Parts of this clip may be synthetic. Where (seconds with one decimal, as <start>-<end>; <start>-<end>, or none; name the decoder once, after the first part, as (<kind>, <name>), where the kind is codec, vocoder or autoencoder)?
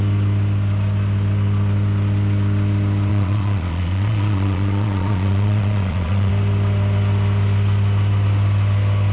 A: 3.1-6.3 (vocoder, Vocos)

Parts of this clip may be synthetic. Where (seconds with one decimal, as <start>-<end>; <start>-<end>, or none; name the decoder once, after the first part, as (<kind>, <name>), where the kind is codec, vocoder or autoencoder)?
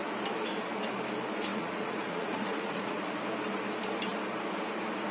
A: 1.5-3.2 (vocoder, Vocos)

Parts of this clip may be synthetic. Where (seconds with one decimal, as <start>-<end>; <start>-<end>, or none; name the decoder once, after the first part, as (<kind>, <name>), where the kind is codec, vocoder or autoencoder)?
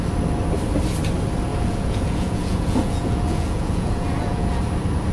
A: 1.5-4.6 (vocoder, Vocos)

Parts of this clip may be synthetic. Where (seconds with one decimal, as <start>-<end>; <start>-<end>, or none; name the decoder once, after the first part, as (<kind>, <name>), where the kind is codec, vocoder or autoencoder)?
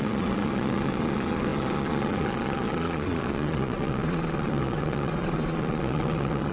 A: 0.0-6.5 (vocoder, Vocos)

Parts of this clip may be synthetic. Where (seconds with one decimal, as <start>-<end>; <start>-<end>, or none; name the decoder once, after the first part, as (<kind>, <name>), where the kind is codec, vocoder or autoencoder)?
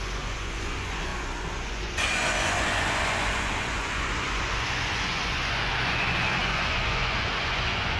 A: 0.0-8.0 (vocoder, Vocos)